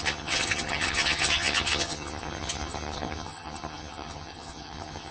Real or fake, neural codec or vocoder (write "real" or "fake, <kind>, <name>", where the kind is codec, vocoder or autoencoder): fake, vocoder, HiFi-GAN